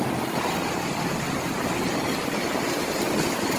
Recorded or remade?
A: recorded